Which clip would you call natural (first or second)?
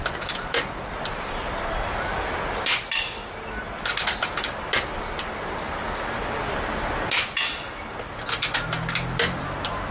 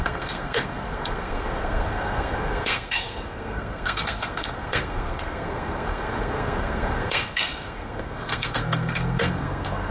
first